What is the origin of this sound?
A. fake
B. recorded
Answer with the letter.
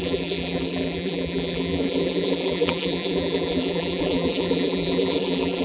A